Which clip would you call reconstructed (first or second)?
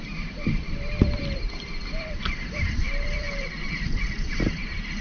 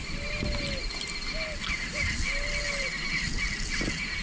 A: first